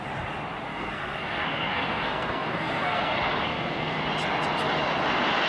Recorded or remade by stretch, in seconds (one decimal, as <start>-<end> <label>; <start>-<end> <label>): 0.0-0.7 recorded; 0.7-4.0 remade; 4.0-5.5 recorded